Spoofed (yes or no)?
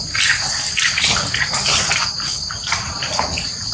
no